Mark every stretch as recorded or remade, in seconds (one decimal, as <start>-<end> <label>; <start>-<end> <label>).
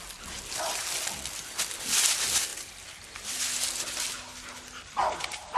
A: 0.0-5.6 recorded